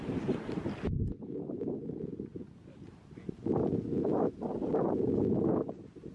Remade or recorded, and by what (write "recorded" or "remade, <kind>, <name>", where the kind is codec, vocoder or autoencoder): recorded